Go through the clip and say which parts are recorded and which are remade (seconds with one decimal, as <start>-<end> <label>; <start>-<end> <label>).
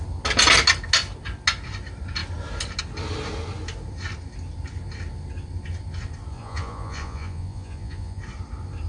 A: 0.0-6.3 recorded; 6.3-8.2 remade; 8.2-8.9 recorded